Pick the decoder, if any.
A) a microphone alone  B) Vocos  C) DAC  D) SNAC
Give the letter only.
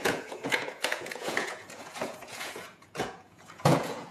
B